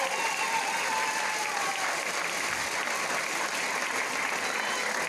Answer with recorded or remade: recorded